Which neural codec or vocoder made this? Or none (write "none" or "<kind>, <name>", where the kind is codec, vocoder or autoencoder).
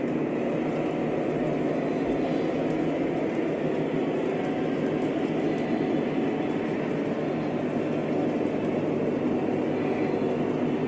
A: none